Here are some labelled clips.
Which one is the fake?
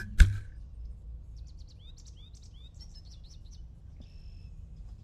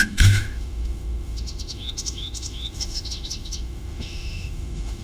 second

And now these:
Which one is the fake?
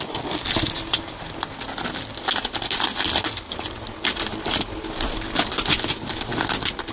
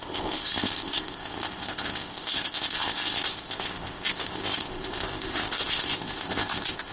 second